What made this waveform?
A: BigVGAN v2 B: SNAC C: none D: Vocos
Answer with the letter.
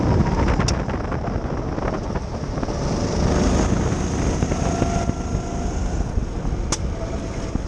C